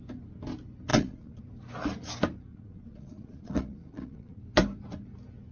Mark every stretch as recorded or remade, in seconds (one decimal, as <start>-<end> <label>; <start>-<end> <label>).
0.0-0.9 recorded; 0.9-1.4 remade; 1.4-2.5 recorded; 2.5-4.4 remade; 4.4-5.5 recorded